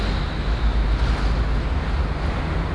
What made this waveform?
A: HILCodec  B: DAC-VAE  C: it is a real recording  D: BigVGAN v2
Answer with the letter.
C